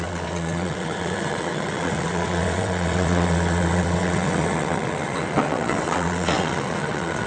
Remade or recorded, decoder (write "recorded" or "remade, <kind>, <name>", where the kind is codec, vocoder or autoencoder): remade, vocoder, WaveNeXt